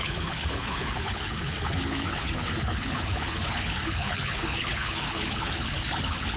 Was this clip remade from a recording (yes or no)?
yes